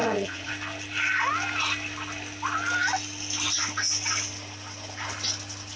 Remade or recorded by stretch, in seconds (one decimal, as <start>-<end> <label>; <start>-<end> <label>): 0.0-0.5 remade; 0.5-5.8 recorded